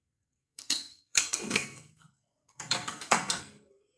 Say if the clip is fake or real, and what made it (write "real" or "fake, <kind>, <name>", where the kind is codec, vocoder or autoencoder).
fake, codec, SNAC